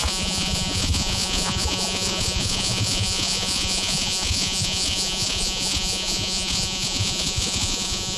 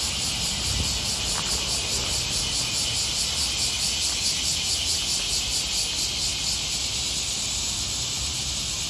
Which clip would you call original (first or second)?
second